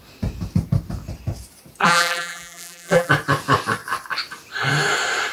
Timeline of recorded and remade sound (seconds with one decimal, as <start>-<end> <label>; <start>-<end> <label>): 0.0-1.8 recorded; 1.8-3.1 remade; 3.1-5.3 recorded